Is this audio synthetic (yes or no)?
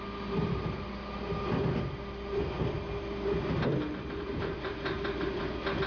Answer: no